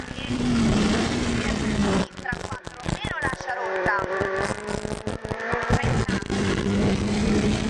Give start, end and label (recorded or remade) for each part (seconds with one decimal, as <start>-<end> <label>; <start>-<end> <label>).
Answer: 0.0-4.5 remade; 4.5-5.7 recorded; 5.7-7.7 remade